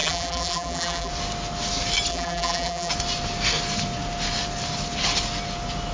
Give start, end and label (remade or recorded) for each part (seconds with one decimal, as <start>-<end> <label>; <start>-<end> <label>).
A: 0.0-1.1 remade; 1.1-2.1 recorded; 2.1-2.9 remade; 2.9-5.9 recorded